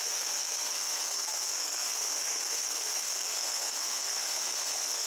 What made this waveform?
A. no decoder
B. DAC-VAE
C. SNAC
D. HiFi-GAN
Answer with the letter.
C